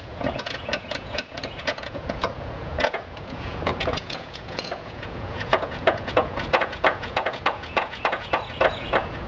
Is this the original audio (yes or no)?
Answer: no